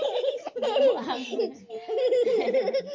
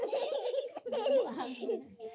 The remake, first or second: second